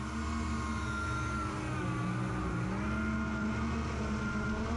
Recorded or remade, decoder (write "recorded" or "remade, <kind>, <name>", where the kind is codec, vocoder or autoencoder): recorded